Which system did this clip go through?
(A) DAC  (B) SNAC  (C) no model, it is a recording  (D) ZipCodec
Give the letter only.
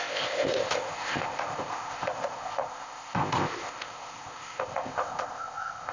D